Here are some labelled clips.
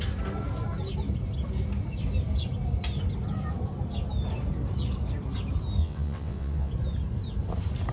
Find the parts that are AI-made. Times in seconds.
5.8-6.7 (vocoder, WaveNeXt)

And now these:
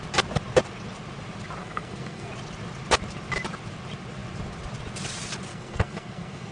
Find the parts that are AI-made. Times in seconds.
1.6-2.3 (codec, SNAC); 5.5-6.5

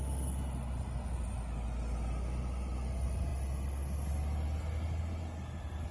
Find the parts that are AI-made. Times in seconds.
none

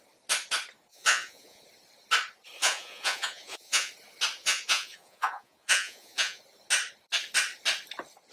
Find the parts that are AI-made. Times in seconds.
0.9-1.6 (vocoder, Vocos); 2.6-3.9; 4.4-6.4

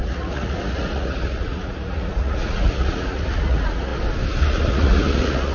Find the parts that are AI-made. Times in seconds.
0.0-3.9 (vocoder, Vocos); 4.4-5.5

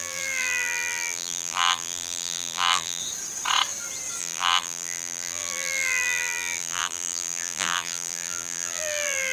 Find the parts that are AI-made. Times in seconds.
0.0-3.0 (vocoder, BigVGAN v2); 4.2-9.3